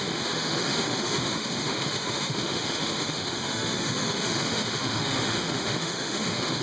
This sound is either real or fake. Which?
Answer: fake